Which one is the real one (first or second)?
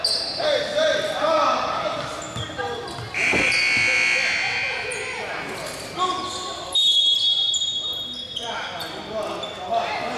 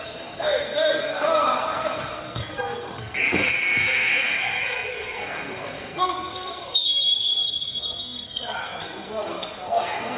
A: first